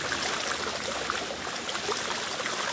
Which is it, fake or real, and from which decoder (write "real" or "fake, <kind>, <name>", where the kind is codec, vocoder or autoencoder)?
real